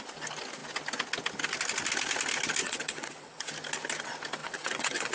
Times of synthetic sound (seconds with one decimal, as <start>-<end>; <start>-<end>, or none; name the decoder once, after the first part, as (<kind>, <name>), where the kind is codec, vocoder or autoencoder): 2.6-3.5 (vocoder, WaveNeXt); 4.4-5.1